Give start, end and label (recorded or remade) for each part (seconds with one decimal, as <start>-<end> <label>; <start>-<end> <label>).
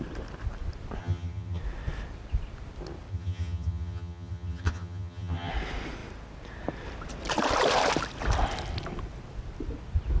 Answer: 0.0-1.0 recorded; 1.0-1.6 remade; 1.6-3.1 recorded; 3.1-5.5 remade; 5.5-10.2 recorded